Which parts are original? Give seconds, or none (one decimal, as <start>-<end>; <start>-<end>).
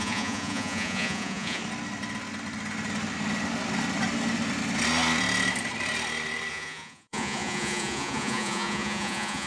1.6-6.5